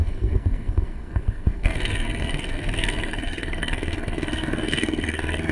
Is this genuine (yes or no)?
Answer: no